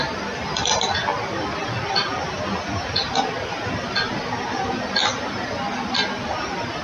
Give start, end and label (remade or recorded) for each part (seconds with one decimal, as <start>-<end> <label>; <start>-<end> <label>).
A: 0.0-6.8 recorded